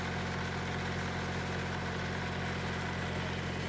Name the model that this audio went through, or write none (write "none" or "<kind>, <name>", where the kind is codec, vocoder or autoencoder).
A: none